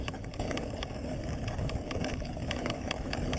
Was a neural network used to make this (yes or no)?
yes